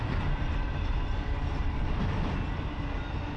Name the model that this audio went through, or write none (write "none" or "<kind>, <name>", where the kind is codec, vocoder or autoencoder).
none